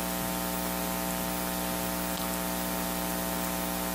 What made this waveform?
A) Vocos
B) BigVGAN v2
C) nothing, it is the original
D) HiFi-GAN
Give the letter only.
C